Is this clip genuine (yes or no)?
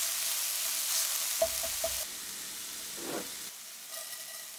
yes